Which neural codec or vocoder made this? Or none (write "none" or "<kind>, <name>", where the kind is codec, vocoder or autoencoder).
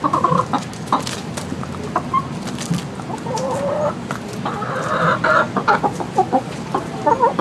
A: none